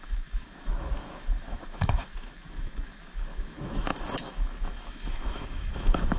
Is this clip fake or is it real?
fake